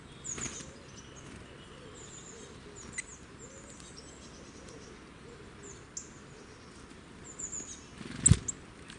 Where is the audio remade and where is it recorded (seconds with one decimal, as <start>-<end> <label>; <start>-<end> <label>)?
0.0-9.0 recorded

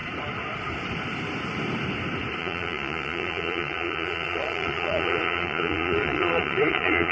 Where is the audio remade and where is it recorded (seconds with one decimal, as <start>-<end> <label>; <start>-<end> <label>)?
0.0-2.4 recorded; 2.4-7.1 remade

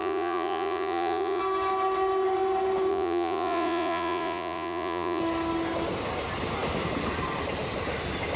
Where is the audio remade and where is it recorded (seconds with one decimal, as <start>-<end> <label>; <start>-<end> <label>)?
0.0-1.4 remade; 1.4-2.9 recorded; 2.9-5.2 remade; 5.2-8.4 recorded

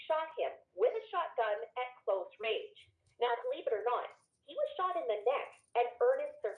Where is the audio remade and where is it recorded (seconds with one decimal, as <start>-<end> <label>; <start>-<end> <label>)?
0.0-2.8 recorded; 2.8-3.5 remade; 3.5-6.6 recorded